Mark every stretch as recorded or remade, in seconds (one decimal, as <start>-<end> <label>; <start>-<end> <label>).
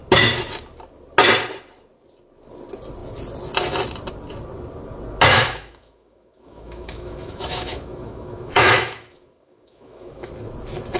0.0-5.3 recorded; 5.3-10.3 remade; 10.3-11.0 recorded